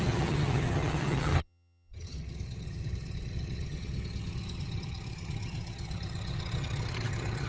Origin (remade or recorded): remade